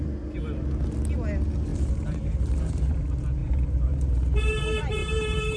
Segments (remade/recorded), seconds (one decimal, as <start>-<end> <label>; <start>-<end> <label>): 0.0-1.7 recorded; 1.7-2.9 remade; 2.9-3.4 recorded; 3.4-4.6 remade; 4.6-5.0 recorded; 5.0-5.6 remade